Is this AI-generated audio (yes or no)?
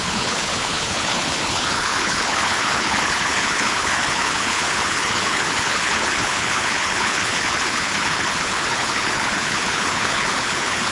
yes